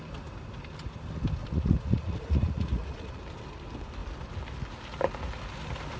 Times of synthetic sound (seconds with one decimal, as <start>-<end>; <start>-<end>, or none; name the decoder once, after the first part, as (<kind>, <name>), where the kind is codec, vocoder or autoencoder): 1.4-3.2 (vocoder, Vocos)